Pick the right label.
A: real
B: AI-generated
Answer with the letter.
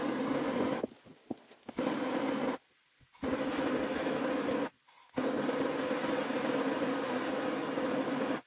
A